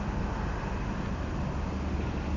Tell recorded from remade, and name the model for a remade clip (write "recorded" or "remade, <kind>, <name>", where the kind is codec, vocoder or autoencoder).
recorded